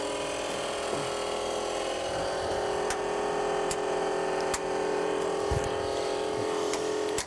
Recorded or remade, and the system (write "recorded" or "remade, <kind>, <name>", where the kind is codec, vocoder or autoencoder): remade, vocoder, BigVGAN v2